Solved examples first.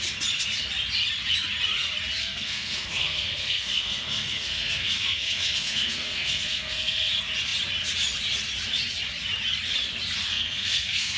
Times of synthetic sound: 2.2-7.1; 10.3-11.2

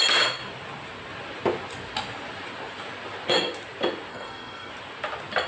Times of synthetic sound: 4.1-4.7

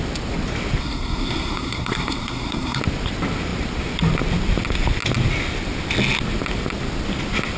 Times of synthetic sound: 0.8-2.8

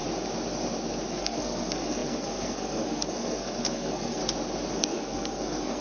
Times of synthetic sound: 1.1-4.2; 4.7-5.8

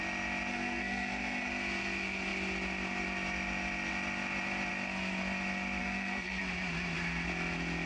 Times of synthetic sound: 0.5-1.5; 5.8-6.4